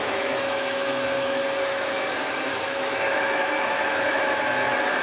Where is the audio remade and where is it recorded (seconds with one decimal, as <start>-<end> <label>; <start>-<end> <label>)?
0.0-1.4 remade; 1.4-1.9 recorded; 1.9-5.0 remade